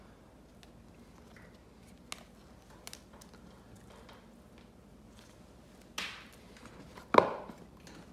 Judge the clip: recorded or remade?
recorded